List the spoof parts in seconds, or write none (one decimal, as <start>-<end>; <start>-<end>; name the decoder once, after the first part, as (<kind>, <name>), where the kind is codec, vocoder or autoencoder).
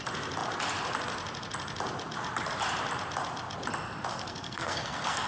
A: 4.1-5.3 (codec, SNAC)